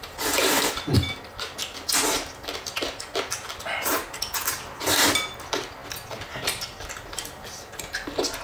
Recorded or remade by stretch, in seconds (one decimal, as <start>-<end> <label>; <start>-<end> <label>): 0.0-8.4 recorded